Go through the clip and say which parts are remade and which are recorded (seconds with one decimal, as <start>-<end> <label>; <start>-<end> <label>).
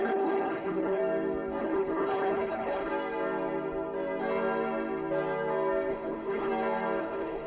0.0-1.0 remade; 1.0-1.6 recorded; 1.6-2.9 remade; 2.9-5.9 recorded; 5.9-6.5 remade; 6.5-7.0 recorded; 7.0-7.5 remade